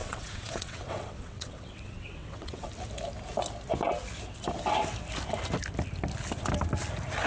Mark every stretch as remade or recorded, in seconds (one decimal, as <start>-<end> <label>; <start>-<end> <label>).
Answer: 0.0-2.7 remade; 2.7-7.3 recorded